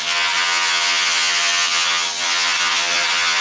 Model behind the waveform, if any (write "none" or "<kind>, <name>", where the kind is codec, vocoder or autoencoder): vocoder, HiFi-GAN